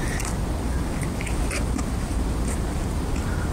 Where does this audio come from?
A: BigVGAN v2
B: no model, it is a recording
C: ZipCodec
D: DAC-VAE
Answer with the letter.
B